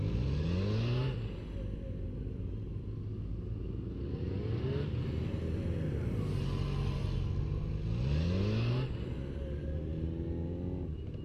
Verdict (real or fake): real